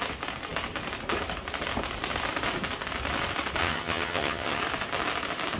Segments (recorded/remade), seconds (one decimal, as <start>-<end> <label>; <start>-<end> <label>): 0.0-3.6 recorded; 3.6-4.6 remade; 4.6-5.6 recorded